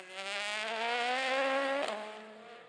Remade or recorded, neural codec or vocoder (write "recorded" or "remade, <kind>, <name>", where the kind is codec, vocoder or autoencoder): recorded